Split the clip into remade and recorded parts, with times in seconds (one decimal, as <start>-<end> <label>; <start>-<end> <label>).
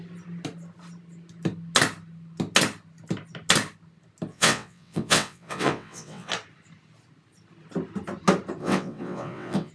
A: 0.0-4.3 recorded; 4.3-6.3 remade; 6.3-8.6 recorded; 8.6-9.7 remade